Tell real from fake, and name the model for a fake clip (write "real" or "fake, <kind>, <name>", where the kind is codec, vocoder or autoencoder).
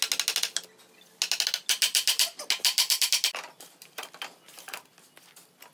real